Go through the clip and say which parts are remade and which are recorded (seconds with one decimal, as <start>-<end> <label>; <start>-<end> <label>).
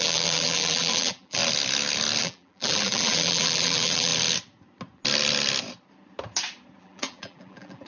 0.0-1.4 remade; 1.4-2.2 recorded; 2.2-4.1 remade; 4.1-6.8 recorded; 6.8-7.9 remade